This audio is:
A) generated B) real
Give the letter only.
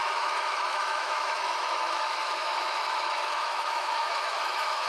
A